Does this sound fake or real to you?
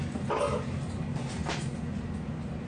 real